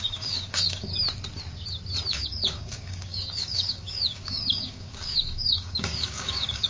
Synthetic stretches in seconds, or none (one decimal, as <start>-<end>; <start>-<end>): 0.0-1.0; 2.1-6.7